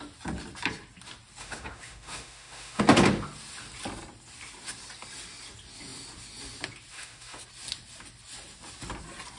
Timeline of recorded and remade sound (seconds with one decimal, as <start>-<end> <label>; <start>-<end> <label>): 0.0-1.4 recorded; 1.4-2.8 remade; 2.8-6.9 recorded; 6.9-7.4 remade; 7.4-9.4 recorded